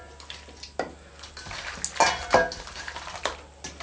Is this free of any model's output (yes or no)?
yes